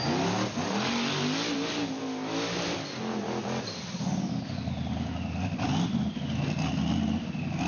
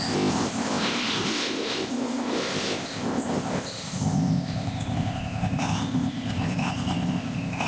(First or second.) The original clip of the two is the first